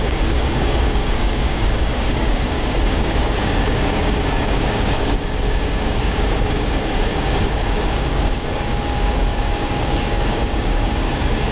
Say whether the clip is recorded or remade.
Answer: remade